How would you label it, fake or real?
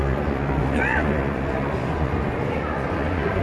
fake